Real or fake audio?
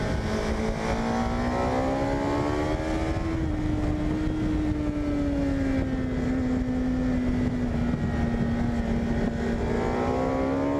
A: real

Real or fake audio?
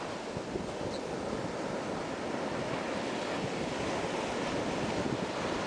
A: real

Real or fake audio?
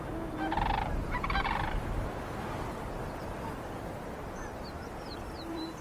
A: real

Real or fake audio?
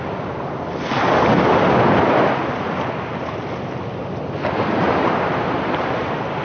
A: real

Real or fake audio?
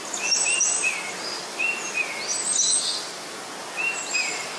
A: real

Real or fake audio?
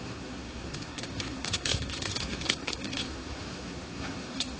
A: fake